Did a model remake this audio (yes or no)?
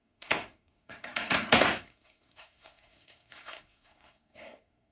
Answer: yes